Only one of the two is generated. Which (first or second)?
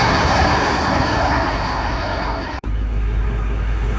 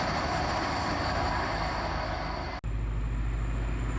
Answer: first